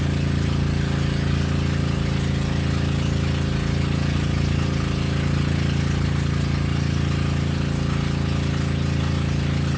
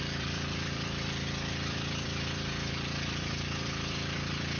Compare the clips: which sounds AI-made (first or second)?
second